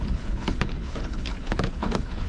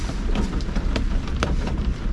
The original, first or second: second